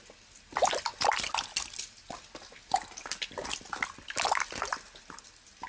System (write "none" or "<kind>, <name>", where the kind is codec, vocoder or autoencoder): none